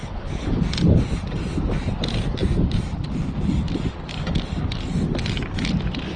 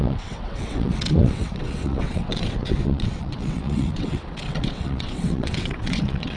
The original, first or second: first